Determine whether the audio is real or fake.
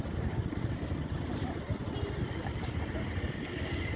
real